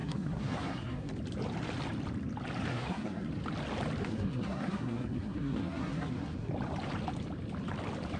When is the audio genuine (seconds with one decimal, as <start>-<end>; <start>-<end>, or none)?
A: 1.1-2.7; 3.3-4.0; 6.5-8.2